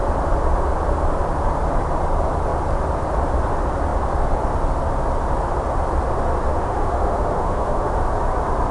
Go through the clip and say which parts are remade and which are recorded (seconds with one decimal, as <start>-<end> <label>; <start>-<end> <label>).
0.0-6.5 recorded; 6.5-7.9 remade; 7.9-8.7 recorded